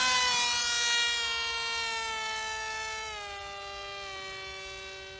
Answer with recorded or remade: recorded